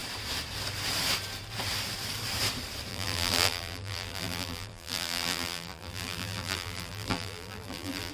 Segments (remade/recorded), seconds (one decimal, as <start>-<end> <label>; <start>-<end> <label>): 0.0-2.9 recorded; 2.9-8.1 remade